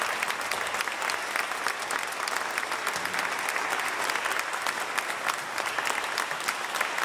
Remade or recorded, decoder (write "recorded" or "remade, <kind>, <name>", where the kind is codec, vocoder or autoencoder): recorded